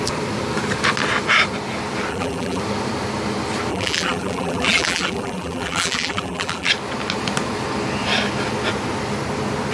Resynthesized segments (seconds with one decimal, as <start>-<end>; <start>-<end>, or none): 2.1-2.6; 3.7-6.7

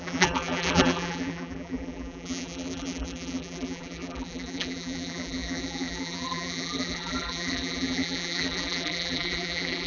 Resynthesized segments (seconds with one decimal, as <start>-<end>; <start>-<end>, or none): 0.0-9.9

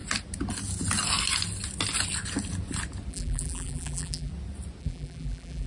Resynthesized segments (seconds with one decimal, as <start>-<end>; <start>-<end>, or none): 3.1-4.3; 4.8-5.7

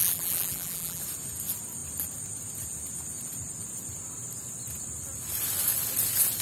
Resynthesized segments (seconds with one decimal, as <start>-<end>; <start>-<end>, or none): 0.0-1.0

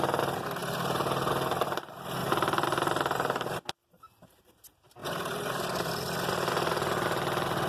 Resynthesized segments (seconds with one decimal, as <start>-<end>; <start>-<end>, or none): 5.0-6.1

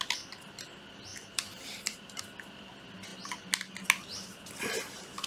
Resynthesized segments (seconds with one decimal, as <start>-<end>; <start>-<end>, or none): 1.1-2.2